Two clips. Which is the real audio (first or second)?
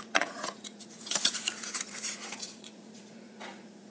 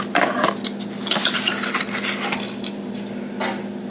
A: second